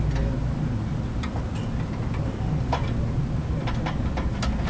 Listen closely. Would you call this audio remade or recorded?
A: recorded